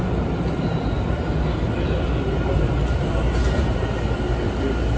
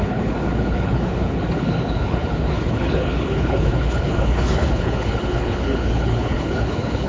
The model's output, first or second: second